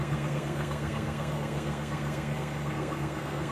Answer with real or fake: fake